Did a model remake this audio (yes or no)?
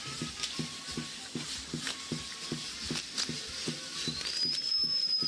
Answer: no